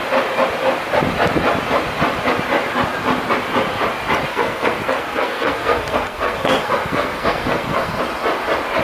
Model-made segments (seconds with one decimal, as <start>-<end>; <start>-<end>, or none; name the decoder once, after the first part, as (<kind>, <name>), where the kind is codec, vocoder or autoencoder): 4.3-8.0 (codec, SNAC)